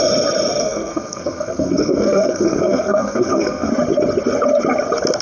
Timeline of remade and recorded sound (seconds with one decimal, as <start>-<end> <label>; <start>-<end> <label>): 0.0-0.6 recorded; 0.6-3.7 remade; 3.7-5.2 recorded